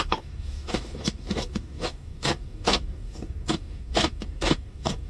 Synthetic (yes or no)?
yes